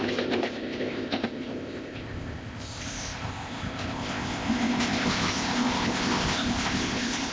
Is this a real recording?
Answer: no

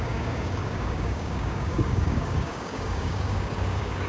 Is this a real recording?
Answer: no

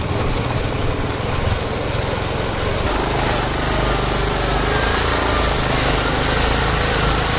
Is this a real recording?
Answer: yes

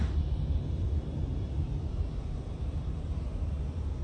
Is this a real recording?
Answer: no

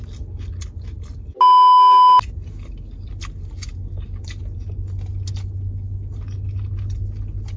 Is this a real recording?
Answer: yes